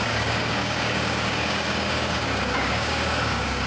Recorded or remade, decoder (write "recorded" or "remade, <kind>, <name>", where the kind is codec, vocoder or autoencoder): remade, codec, DAC